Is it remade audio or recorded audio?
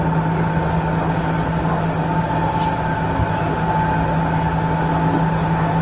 recorded